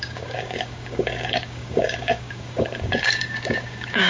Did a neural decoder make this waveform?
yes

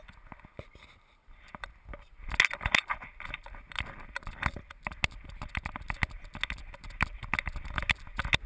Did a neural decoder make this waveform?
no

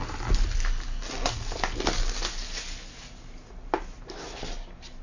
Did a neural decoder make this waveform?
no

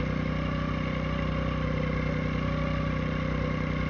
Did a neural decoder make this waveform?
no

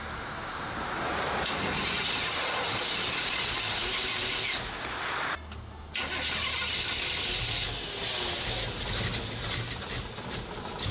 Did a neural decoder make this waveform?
no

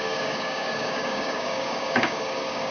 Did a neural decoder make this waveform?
yes